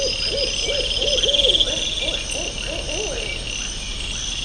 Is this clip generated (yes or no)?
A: no